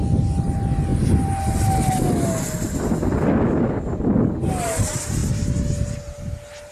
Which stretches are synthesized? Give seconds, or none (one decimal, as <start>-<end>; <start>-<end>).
none